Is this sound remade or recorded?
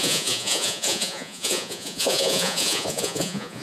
remade